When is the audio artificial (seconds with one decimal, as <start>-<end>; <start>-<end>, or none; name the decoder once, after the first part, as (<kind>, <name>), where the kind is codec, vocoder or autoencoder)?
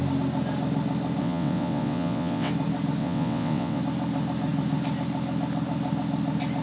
1.2-2.5 (vocoder, WaveNeXt); 3.0-3.8